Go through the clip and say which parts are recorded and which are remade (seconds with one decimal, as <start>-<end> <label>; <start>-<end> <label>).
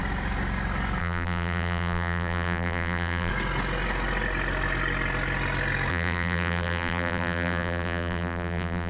0.0-1.0 recorded; 1.0-3.3 remade; 3.3-5.9 recorded; 5.9-8.9 remade